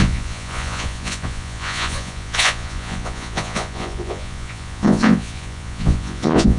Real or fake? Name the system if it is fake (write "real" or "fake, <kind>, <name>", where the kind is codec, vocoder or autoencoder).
fake, vocoder, Vocos